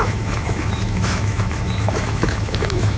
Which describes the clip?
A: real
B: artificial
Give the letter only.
B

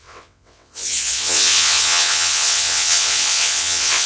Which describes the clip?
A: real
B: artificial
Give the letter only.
B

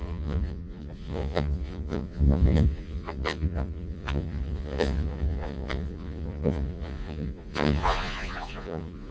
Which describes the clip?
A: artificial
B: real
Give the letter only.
A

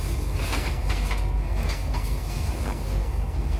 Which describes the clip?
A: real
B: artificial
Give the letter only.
B